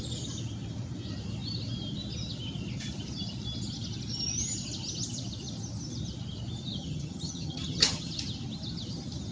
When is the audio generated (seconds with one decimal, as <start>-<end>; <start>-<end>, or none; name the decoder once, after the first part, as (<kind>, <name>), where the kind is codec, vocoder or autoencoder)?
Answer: 6.8-8.1 (vocoder, HiFi-GAN)